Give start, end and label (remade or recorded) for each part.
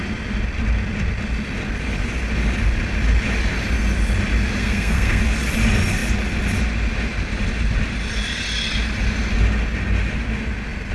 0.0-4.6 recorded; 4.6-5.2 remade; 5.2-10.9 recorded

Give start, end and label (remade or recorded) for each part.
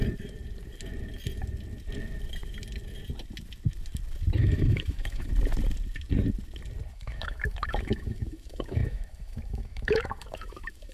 0.0-4.4 recorded; 4.4-5.3 remade; 5.3-6.9 recorded; 6.9-10.9 remade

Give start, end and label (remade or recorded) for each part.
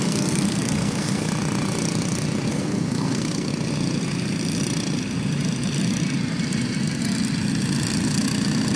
0.0-1.3 remade; 1.3-2.5 recorded; 2.5-3.5 remade; 3.5-8.8 recorded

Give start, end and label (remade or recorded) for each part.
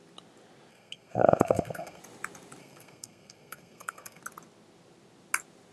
0.0-0.7 recorded; 0.7-2.0 remade; 2.0-2.6 recorded; 2.6-4.2 remade; 4.2-5.7 recorded